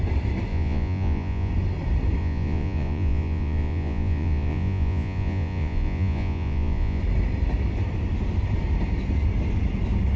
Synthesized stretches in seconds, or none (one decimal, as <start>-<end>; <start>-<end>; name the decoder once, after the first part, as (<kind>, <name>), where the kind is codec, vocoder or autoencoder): 0.5-1.5 (vocoder, Vocos); 2.2-7.0